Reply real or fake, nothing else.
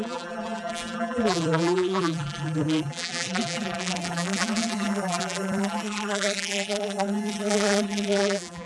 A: fake